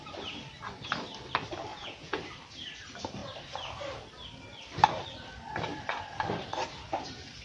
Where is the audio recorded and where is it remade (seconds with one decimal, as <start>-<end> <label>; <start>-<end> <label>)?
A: 0.0-1.7 recorded; 1.7-2.2 remade; 2.2-7.4 recorded